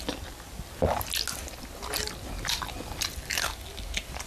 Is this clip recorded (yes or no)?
yes